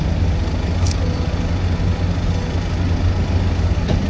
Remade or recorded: recorded